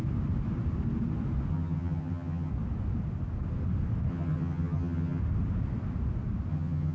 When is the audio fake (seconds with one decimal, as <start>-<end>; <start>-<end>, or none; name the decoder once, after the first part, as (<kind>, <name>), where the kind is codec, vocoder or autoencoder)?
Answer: 1.5-2.5 (vocoder, HiFi-GAN); 4.1-5.2; 6.5-6.9